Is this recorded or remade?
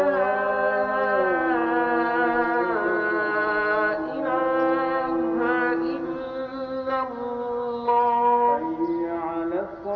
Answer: recorded